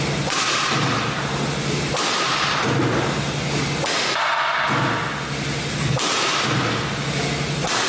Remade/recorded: recorded